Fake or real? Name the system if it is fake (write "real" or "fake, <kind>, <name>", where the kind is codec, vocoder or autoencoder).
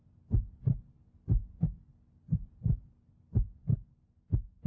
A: real